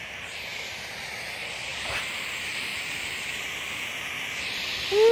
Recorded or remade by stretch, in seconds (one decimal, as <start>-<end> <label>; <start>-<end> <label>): 0.0-0.5 recorded; 0.5-1.1 remade; 1.1-1.7 recorded; 1.7-2.3 remade; 2.3-5.1 recorded